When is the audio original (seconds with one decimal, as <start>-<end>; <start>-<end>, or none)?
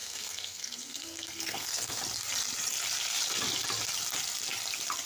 2.0-5.1